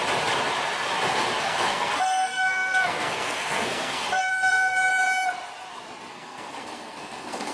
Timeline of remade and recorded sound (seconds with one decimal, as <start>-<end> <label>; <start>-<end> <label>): 0.0-1.4 recorded; 1.4-4.9 remade; 4.9-6.1 recorded; 6.1-7.5 remade